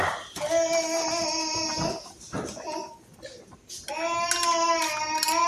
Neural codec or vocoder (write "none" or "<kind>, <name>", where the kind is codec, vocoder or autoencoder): none